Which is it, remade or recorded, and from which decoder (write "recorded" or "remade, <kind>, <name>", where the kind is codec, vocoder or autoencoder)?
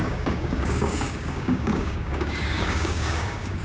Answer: remade, codec, DAC